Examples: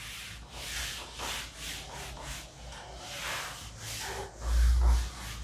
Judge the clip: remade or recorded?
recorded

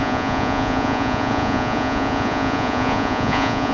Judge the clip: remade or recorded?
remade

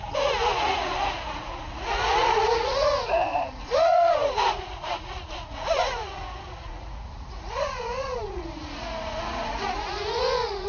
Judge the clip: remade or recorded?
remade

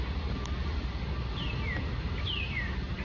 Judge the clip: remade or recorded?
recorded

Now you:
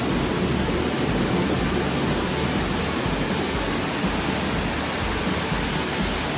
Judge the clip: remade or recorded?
recorded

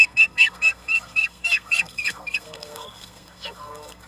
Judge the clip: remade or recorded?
remade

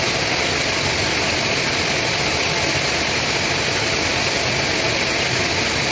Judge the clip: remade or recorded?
recorded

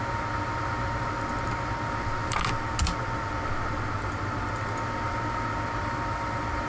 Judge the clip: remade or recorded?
recorded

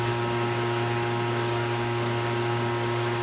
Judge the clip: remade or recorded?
remade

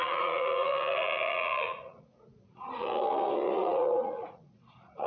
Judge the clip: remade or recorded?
remade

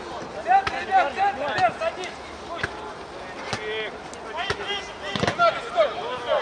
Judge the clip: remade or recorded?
recorded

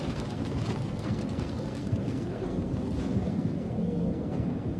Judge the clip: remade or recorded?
remade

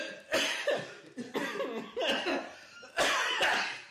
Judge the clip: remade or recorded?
recorded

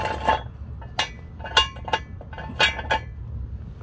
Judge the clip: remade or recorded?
recorded